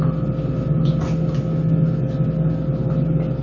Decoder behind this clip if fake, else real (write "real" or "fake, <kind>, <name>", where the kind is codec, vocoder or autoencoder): real